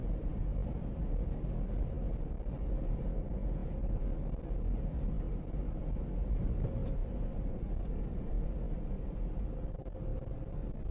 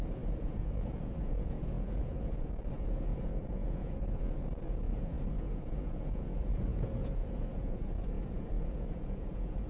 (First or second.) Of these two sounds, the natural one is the first